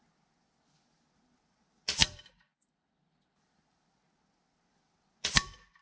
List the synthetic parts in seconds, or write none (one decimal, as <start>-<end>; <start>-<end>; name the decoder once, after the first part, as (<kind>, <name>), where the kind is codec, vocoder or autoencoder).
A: 2.0-3.8 (vocoder, BigVGAN v2)